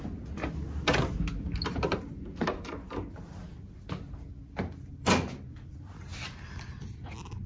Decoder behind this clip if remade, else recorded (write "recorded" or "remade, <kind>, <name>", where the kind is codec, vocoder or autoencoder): recorded